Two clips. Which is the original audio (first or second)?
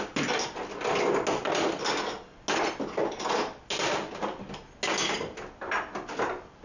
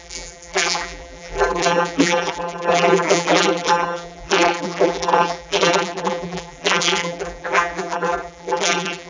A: first